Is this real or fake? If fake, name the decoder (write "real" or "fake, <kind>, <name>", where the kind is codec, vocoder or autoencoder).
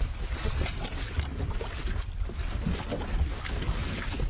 real